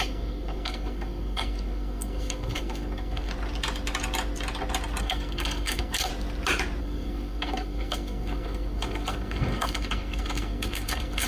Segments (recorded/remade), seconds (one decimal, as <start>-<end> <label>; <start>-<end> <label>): 0.0-3.3 remade; 3.3-5.0 recorded; 5.0-6.1 remade; 6.1-6.8 recorded; 6.8-11.3 remade